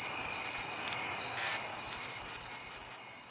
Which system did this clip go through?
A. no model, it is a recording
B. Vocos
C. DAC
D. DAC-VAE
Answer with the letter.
A